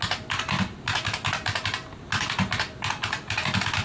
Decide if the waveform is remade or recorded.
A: recorded